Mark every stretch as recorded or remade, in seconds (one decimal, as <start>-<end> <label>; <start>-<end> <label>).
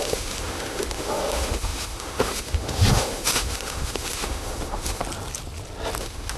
0.0-5.0 remade; 5.0-6.0 recorded; 6.0-6.4 remade